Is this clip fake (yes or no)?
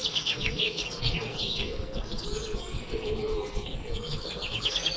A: yes